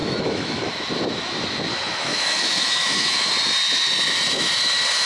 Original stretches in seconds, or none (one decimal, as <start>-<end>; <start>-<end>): 0.7-1.7; 3.3-5.1